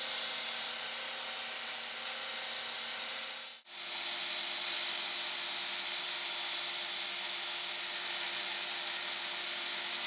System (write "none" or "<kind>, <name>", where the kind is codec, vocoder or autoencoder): none